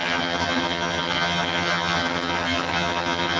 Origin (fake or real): fake